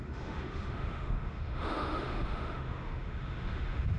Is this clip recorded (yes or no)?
no